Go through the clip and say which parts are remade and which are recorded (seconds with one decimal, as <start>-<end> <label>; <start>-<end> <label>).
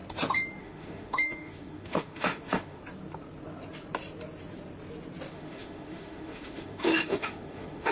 0.0-0.6 recorded; 0.6-2.8 remade; 2.8-5.3 recorded; 5.3-7.9 remade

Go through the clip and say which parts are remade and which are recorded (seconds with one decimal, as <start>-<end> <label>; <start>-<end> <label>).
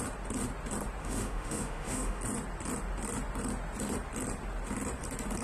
0.0-1.0 recorded; 1.0-2.2 remade; 2.2-5.4 recorded